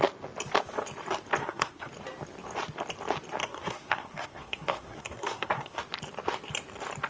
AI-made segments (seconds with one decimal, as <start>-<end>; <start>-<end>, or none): 1.4-1.9; 3.4-5.8